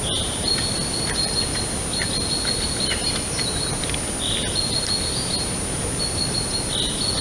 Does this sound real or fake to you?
real